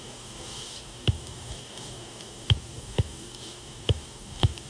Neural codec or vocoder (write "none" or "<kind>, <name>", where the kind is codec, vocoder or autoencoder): codec, DAC